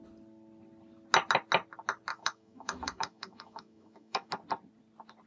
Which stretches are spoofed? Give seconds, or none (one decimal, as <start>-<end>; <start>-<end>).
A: 2.1-4.3